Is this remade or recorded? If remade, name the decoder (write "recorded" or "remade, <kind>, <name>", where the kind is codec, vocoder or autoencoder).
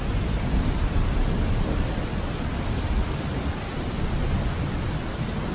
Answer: recorded